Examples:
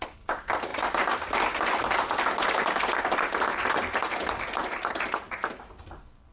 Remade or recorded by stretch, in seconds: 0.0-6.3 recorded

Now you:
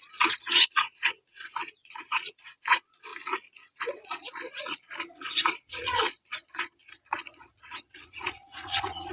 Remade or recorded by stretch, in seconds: 0.0-3.1 remade; 3.1-3.8 recorded; 3.8-9.1 remade

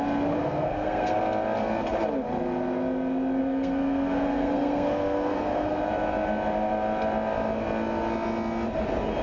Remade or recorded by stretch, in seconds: 0.0-0.4 recorded; 0.4-1.2 remade; 1.2-3.4 recorded; 3.4-5.8 remade; 5.8-9.2 recorded